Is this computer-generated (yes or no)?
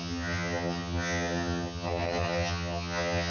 yes